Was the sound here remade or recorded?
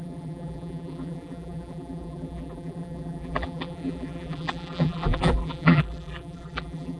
remade